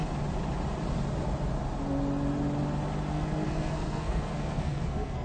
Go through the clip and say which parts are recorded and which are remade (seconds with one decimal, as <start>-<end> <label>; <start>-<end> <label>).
0.0-3.1 recorded; 3.1-5.2 remade

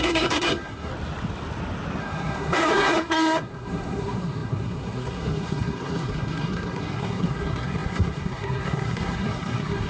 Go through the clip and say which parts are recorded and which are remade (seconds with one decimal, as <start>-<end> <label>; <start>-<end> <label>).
0.0-0.9 remade; 0.9-2.0 recorded; 2.0-9.9 remade

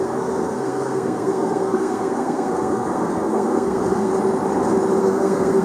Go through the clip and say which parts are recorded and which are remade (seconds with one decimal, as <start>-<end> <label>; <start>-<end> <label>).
0.0-4.1 remade; 4.1-5.0 recorded; 5.0-5.6 remade

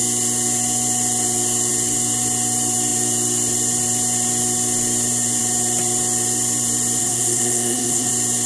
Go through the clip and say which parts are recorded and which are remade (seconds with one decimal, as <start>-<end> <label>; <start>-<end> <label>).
0.0-7.0 recorded; 7.0-8.1 remade; 8.1-8.5 recorded